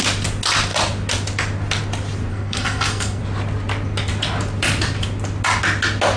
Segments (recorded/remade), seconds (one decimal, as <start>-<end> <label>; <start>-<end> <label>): 0.0-2.3 recorded; 2.3-3.2 remade; 3.2-6.2 recorded